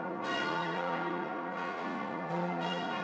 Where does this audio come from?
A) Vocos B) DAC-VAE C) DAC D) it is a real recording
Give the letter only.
A